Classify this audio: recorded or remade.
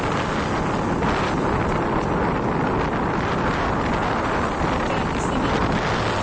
recorded